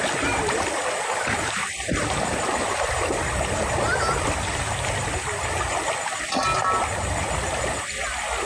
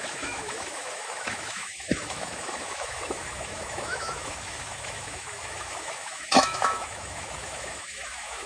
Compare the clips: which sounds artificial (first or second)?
second